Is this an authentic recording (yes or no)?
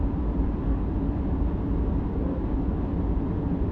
yes